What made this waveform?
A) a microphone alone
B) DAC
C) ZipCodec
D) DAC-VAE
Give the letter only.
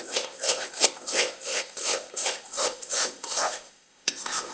C